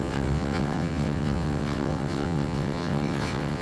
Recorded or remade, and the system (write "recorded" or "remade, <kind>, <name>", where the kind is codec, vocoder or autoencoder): remade, vocoder, WaveNeXt